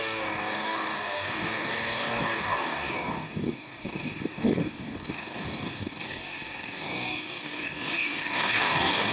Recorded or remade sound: remade